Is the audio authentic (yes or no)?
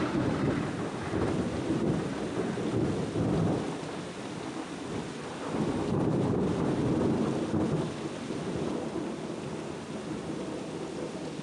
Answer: yes